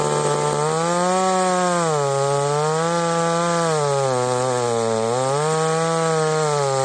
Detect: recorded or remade recorded